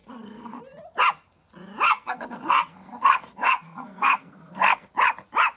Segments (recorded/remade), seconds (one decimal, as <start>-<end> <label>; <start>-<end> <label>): 0.0-0.6 remade; 0.6-1.9 recorded; 1.9-4.9 remade; 4.9-5.6 recorded